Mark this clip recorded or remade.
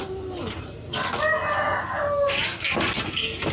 recorded